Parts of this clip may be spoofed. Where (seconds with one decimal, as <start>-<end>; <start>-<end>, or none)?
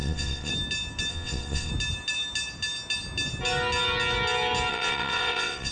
0.0-0.5; 1.1-1.7; 4.7-5.7